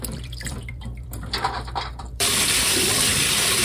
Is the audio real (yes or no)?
no